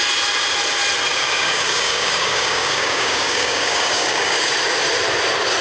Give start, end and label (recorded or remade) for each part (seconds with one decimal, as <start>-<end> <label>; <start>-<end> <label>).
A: 0.0-1.1 recorded; 1.1-4.5 remade; 4.5-5.6 recorded